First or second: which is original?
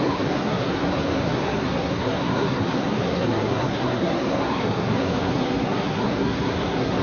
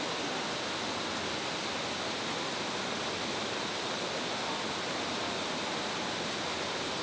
second